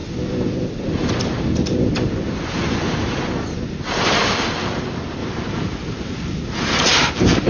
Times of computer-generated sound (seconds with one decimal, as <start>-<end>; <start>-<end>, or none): 5.2-7.5